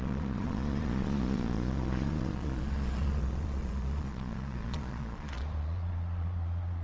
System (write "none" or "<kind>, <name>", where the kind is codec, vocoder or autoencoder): vocoder, Vocos